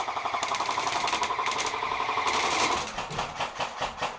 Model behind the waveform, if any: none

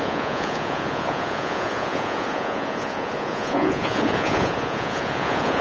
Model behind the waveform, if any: vocoder, Vocos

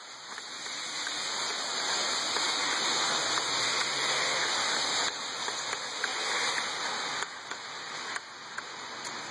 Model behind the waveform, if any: none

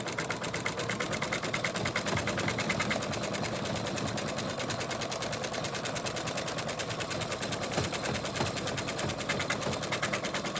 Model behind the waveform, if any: none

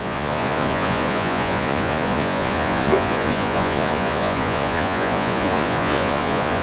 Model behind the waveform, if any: vocoder, Vocos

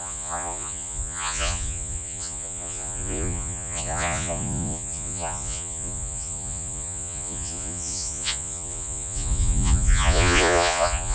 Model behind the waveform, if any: vocoder, Vocos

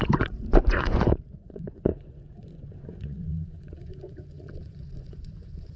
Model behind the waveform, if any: vocoder, Vocos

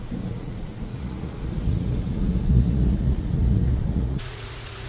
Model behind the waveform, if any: vocoder, Vocos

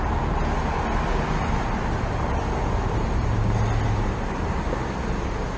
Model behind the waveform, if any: none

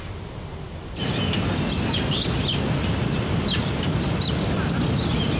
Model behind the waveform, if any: none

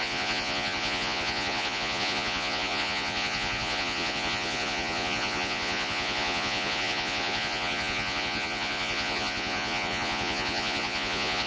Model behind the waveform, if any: vocoder, Vocos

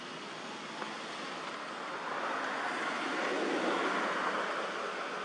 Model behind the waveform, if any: none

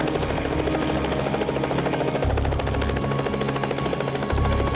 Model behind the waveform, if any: none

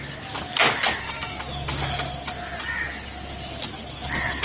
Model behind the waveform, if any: none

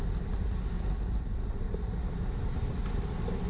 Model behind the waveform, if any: none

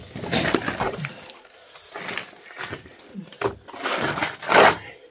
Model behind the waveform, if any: none